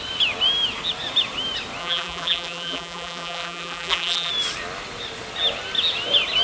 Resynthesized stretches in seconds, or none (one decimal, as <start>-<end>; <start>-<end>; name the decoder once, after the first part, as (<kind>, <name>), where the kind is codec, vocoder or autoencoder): 1.8-4.3 (vocoder, BigVGAN v2)